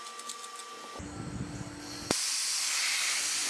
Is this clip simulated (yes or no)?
no